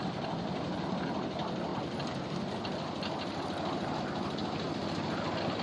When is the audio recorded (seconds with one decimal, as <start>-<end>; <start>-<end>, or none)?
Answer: 0.0-5.6